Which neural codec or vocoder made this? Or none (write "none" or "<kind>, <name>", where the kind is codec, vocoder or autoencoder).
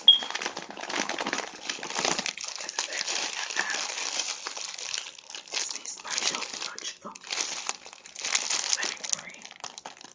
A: none